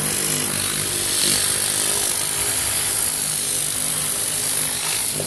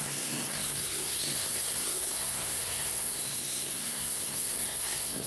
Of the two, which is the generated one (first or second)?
second